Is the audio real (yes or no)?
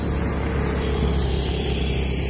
yes